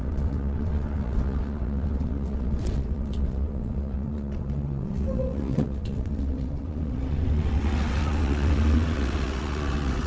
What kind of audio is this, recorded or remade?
remade